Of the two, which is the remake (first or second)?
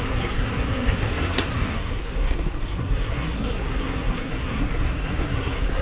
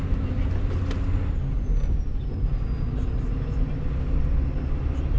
first